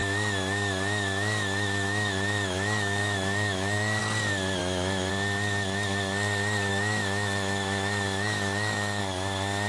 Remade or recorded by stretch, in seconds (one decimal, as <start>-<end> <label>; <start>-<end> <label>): 0.0-4.0 remade; 4.0-4.6 recorded; 4.6-5.1 remade; 5.1-6.7 recorded; 6.7-9.0 remade; 9.0-9.7 recorded